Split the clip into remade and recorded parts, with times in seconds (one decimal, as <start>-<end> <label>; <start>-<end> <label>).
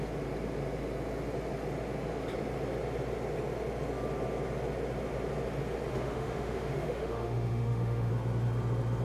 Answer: 0.0-5.9 recorded; 5.9-8.1 remade; 8.1-9.0 recorded